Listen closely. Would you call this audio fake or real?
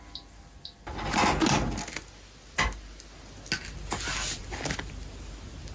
real